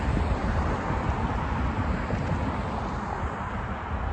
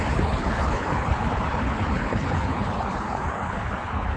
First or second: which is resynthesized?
second